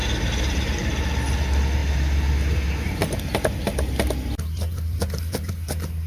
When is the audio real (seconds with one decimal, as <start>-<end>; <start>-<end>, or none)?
1.0-6.1